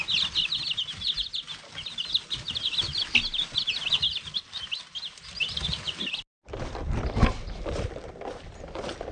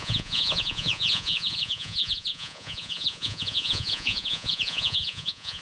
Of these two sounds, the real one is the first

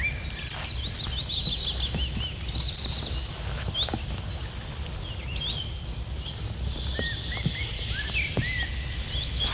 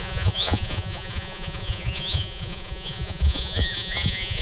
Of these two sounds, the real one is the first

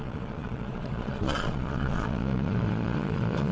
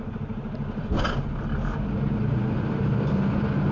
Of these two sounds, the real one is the second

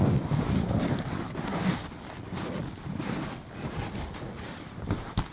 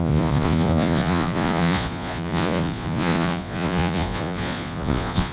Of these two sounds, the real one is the first